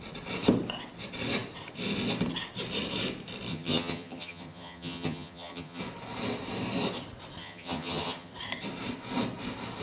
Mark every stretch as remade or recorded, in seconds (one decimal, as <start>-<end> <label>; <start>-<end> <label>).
0.0-3.5 recorded; 3.5-5.8 remade; 5.8-7.4 recorded; 7.4-8.3 remade; 8.3-9.8 recorded